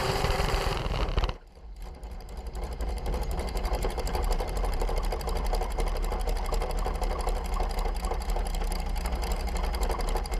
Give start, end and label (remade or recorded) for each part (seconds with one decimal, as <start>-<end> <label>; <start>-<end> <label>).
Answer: 0.0-5.0 remade; 5.0-10.4 recorded